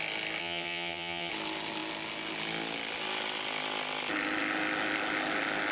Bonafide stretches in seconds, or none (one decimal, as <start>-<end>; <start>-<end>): 0.0-0.4; 1.3-5.7

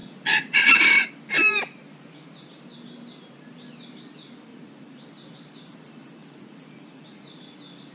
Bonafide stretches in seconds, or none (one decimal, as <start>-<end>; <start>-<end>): 0.8-4.5; 5.0-6.2; 7.5-7.9

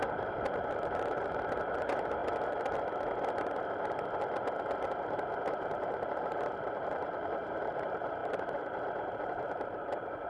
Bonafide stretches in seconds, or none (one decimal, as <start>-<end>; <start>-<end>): 2.2-5.0

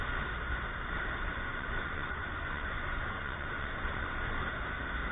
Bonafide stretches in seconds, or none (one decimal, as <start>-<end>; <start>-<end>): 0.0-1.3; 4.4-5.1

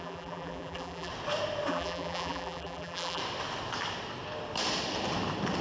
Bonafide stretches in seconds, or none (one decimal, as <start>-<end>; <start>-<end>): 1.1-1.7; 3.2-5.6